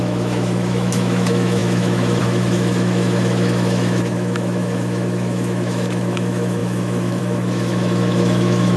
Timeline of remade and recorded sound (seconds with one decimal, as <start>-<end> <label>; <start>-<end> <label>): 0.0-8.8 remade